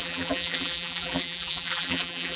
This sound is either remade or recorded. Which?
remade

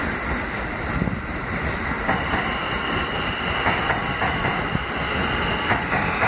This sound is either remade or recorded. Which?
recorded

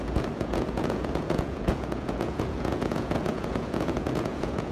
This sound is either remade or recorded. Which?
remade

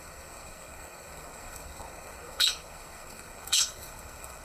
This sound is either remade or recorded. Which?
remade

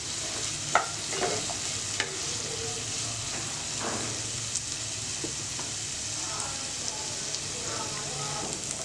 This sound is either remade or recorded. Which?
recorded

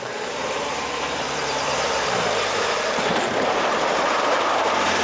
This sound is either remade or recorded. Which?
remade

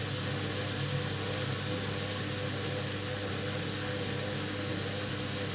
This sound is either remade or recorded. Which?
recorded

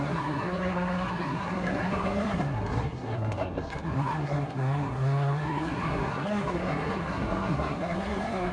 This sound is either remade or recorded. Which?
remade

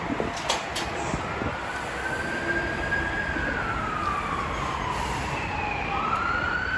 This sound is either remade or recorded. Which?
recorded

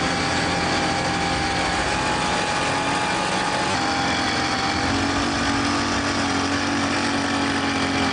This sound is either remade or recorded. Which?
recorded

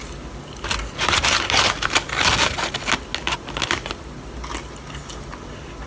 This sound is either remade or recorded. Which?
recorded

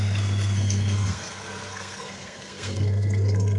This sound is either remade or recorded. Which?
remade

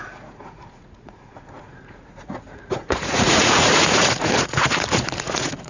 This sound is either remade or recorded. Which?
remade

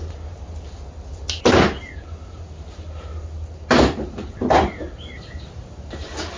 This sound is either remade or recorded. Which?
recorded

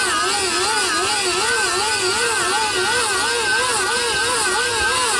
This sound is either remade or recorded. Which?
recorded